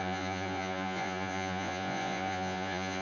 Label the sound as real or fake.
fake